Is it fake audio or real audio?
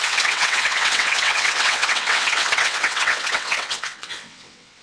fake